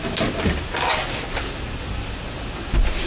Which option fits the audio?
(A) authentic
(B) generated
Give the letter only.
A